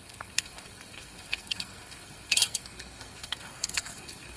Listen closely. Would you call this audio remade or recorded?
remade